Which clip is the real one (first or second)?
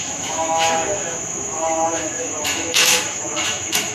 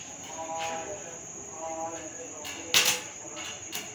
second